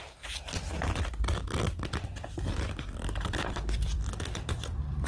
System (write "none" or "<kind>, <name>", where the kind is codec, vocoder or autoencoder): vocoder, BigVGAN v2